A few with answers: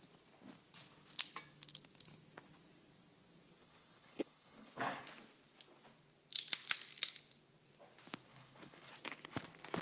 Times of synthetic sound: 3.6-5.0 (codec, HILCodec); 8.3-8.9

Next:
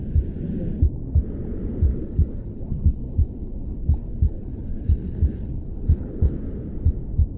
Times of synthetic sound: 1.9-6.3 (codec, HILCodec)

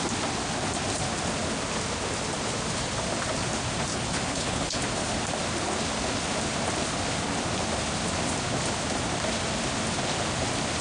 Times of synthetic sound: 3.9-4.8 (codec, HILCodec)